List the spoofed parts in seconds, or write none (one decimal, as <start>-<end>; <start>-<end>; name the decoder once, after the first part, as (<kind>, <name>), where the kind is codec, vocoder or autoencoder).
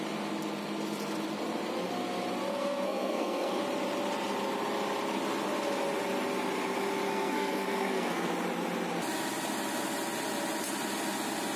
2.5-3.6 (codec, SNAC); 7.1-8.3